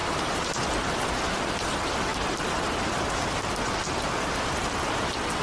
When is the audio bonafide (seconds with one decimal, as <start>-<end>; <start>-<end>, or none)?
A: 0.0-5.4